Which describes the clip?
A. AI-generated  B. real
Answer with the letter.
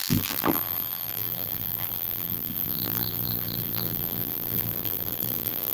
A